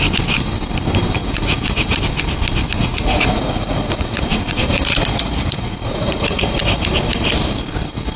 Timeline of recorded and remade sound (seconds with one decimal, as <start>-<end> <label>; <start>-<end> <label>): 0.0-1.2 recorded; 1.2-2.0 remade; 2.0-2.8 recorded; 2.8-6.6 remade; 6.6-8.2 recorded

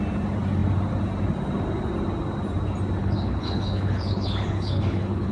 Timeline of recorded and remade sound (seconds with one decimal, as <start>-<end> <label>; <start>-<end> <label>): 0.0-3.0 recorded; 3.0-5.3 remade

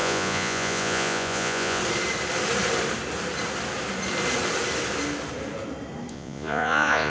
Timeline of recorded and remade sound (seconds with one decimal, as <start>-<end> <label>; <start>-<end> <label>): 0.0-1.8 remade; 1.8-6.1 recorded; 6.1-7.1 remade

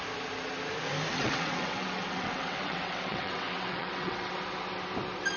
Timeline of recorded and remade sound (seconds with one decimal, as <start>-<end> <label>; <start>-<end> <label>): 0.0-1.1 recorded; 1.1-4.3 remade; 4.3-5.4 recorded

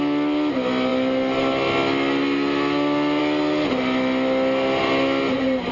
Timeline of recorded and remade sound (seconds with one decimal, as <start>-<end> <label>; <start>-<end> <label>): 0.0-5.7 recorded